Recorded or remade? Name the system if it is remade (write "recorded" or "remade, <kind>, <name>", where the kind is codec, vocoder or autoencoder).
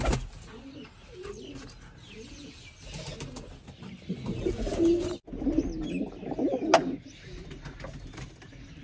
recorded